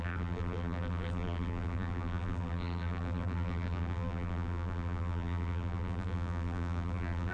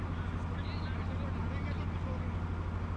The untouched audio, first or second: second